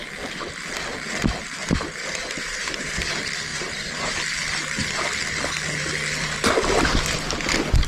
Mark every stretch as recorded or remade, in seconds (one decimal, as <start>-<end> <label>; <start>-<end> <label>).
0.0-1.6 recorded; 1.6-3.0 remade; 3.0-3.5 recorded; 3.5-4.2 remade; 4.2-7.9 recorded